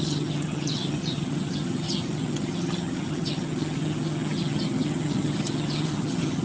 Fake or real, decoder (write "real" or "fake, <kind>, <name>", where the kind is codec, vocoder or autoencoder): fake, vocoder, HiFi-GAN